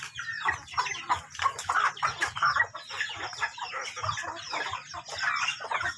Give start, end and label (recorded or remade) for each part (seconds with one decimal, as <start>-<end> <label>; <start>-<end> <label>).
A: 0.0-6.0 recorded